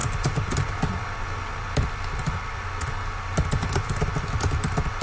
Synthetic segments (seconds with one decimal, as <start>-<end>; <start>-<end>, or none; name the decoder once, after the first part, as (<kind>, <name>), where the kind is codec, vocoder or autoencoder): none

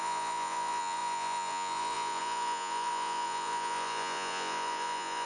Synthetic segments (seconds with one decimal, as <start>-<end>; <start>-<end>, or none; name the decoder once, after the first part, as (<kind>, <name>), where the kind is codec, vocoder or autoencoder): 0.0-5.3 (vocoder, Vocos)

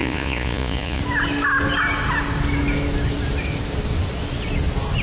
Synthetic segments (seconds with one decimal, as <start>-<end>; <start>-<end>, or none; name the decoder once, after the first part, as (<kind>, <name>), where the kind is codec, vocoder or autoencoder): 0.0-1.0 (vocoder, Vocos)

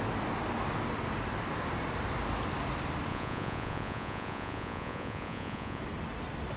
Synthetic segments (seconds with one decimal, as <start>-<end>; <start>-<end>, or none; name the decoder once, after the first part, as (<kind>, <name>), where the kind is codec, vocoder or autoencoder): 3.1-5.8 (vocoder, Vocos)